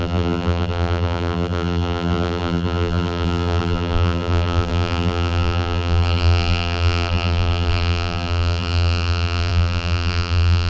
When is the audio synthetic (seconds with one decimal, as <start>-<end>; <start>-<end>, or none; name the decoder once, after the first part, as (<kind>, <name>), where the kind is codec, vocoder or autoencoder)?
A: 0.0-10.7 (vocoder, BigVGAN v2)

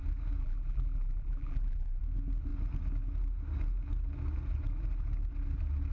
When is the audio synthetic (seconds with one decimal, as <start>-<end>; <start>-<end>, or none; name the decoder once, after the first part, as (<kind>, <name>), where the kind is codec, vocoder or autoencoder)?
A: 0.4-2.0 (vocoder, BigVGAN v2)

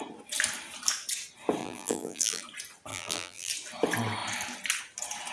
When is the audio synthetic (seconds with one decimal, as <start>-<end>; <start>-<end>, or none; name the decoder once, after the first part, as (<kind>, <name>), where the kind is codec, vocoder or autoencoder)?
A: 1.6-2.4 (vocoder, BigVGAN v2); 2.9-3.5